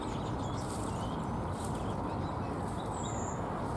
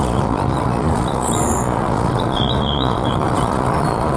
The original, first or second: first